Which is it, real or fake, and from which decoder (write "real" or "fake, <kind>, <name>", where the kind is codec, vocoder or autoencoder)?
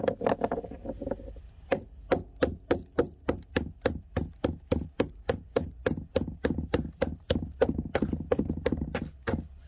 real